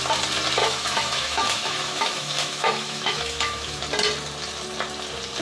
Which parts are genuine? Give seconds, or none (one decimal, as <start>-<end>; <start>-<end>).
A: 0.0-0.6; 3.8-5.4

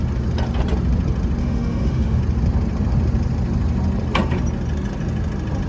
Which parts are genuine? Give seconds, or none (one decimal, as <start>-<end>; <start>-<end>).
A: 0.0-1.4; 2.2-5.7

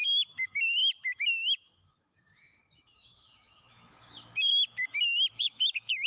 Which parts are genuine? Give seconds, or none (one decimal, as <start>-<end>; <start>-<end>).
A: 4.5-5.3

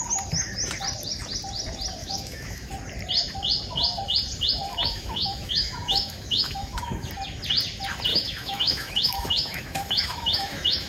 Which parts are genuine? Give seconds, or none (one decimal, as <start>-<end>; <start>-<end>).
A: 0.0-2.0; 2.7-4.7; 7.1-8.1